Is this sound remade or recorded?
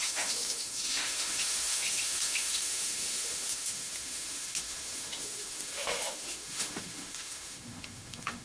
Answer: remade